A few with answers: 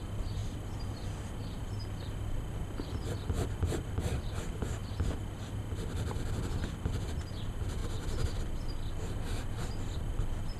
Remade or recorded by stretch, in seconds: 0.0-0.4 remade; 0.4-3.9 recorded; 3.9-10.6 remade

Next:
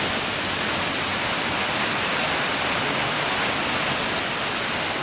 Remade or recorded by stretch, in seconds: 0.0-1.1 recorded; 1.1-3.3 remade; 3.3-5.0 recorded

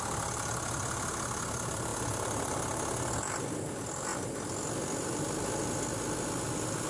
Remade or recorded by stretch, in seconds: 0.0-1.9 recorded; 1.9-2.6 remade; 2.6-6.9 recorded

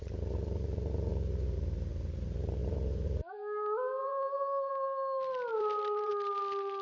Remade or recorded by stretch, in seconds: 0.0-4.0 recorded; 4.0-4.7 remade; 4.7-5.5 recorded; 5.5-6.1 remade; 6.1-6.8 recorded